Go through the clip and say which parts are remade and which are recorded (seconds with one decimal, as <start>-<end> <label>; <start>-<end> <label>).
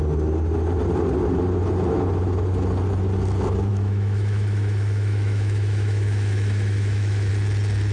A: 0.0-3.7 recorded; 3.7-7.3 remade; 7.3-7.9 recorded